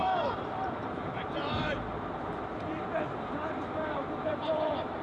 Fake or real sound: fake